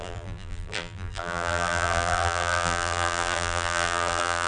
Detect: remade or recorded remade